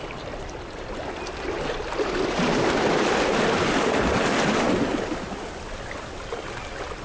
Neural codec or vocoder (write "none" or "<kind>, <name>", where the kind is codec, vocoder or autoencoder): none